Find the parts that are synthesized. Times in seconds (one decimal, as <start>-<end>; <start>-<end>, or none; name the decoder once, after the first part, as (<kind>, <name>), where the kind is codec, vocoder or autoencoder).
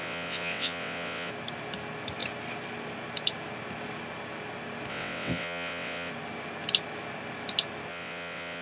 0.0-1.3 (vocoder, WaveNeXt); 4.9-6.1; 7.9-8.6